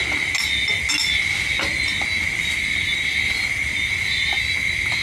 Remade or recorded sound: recorded